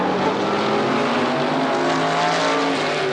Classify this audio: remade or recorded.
recorded